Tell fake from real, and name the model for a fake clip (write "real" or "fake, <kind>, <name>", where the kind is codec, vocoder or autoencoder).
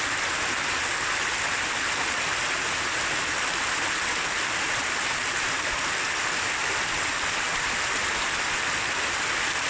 real